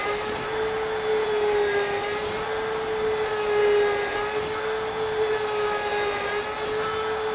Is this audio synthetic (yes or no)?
no